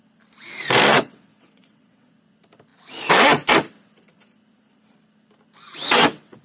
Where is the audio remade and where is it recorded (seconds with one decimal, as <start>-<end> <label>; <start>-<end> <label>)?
0.0-0.9 recorded; 0.9-2.1 remade; 2.1-5.8 recorded; 5.8-6.4 remade